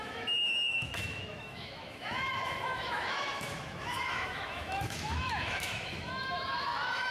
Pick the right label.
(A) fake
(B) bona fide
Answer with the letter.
A